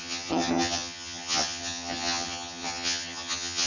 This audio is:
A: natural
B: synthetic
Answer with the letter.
B